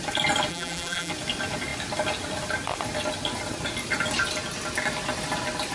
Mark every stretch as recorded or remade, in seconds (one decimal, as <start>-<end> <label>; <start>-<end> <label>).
0.0-0.5 recorded; 0.5-1.1 remade; 1.1-5.7 recorded